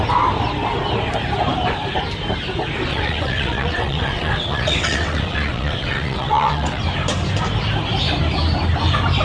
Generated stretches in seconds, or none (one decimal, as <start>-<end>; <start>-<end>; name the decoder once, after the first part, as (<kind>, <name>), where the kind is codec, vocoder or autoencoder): 2.9-6.8 (vocoder, WaveNeXt)